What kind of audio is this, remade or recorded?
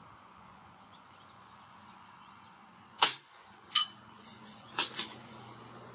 remade